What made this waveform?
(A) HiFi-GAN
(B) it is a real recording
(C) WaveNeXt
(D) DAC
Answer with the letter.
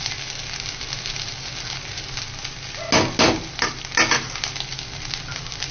B